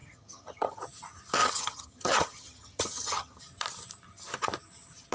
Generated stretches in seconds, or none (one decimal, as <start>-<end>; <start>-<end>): 0.0-0.8; 1.4-3.4